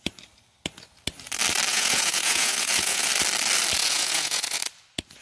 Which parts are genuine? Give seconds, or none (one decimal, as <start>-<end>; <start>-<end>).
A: 0.0-1.7; 3.1-3.8; 4.6-5.2